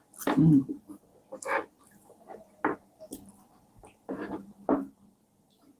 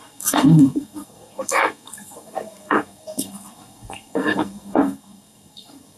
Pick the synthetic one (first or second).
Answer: second